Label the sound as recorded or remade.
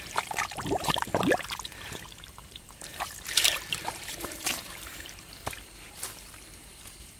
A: remade